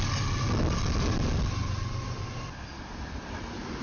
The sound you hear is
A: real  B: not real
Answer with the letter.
A